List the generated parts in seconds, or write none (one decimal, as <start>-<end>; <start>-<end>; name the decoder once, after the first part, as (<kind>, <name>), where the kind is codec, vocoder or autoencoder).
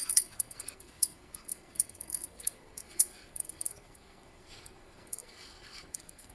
0.0-6.3 (codec, SNAC)